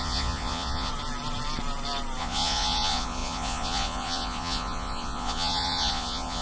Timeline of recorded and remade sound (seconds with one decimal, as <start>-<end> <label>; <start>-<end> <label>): 0.0-0.9 remade; 0.9-2.2 recorded; 2.2-6.4 remade